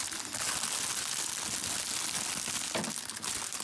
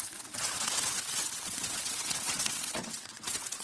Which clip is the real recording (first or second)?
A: first